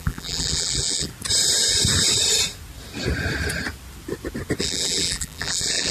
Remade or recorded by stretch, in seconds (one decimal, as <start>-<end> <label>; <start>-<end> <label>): 0.0-1.1 remade; 1.1-4.6 recorded; 4.6-5.9 remade